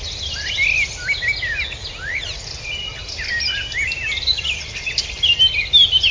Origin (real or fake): real